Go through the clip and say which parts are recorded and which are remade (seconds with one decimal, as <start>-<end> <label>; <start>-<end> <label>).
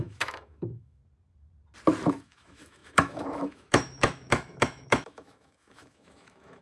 0.0-1.0 remade; 1.0-2.1 recorded; 2.1-6.6 remade